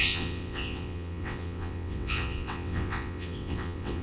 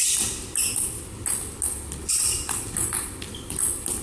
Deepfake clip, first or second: first